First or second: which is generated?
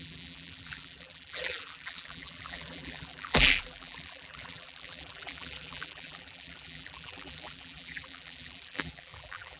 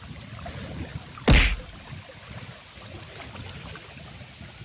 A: first